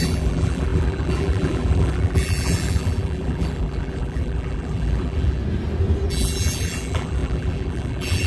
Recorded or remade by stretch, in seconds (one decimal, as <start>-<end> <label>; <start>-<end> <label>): 0.0-5.4 remade; 5.4-6.1 recorded; 6.1-8.3 remade

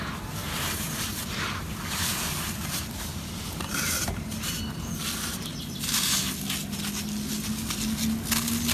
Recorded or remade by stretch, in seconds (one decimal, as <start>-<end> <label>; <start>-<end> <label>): 0.0-0.4 recorded; 0.4-4.9 remade; 4.9-8.7 recorded

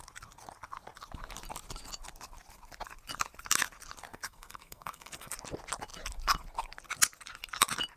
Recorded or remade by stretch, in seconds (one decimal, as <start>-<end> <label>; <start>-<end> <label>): 0.0-4.1 recorded; 4.1-5.3 remade; 5.3-8.0 recorded

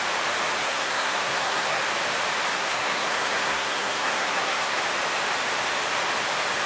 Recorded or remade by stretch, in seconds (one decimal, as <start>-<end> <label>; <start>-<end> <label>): 0.0-0.6 recorded; 0.6-1.8 remade; 1.8-2.5 recorded; 2.5-4.8 remade; 4.8-6.7 recorded

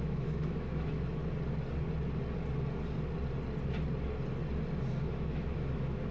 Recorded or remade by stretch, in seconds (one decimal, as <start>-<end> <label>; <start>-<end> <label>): 0.0-1.2 remade; 1.2-4.9 recorded; 4.9-6.1 remade